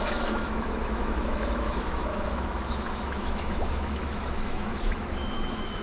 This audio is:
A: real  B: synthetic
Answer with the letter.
B